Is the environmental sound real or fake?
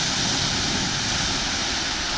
real